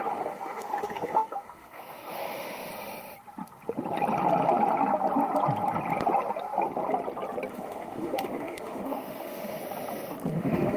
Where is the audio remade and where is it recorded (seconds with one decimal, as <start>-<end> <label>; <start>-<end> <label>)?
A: 0.0-2.7 remade; 2.7-7.5 recorded; 7.5-9.6 remade; 9.6-10.3 recorded; 10.3-10.8 remade